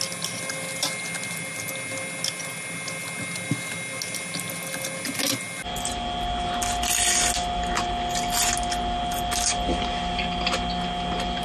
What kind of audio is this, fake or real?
real